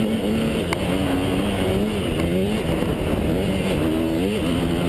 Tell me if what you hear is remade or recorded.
recorded